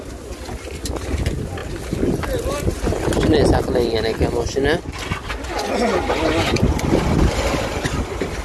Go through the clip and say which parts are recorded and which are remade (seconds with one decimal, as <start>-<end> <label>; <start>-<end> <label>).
0.0-8.4 recorded